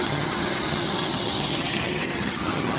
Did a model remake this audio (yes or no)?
yes